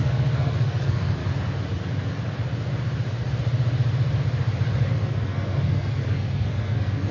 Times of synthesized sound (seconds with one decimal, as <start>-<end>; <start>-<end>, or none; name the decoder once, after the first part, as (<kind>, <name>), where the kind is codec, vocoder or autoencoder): 0.0-1.2 (codec, SNAC); 4.9-7.1